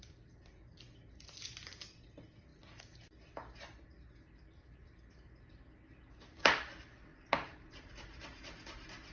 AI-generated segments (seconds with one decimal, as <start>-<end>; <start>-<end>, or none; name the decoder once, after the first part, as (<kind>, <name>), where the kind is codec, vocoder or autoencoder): 7.1-7.9 (vocoder, BigVGAN v2)